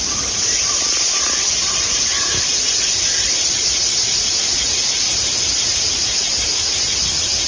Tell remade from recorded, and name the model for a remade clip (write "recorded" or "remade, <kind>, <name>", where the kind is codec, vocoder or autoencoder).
recorded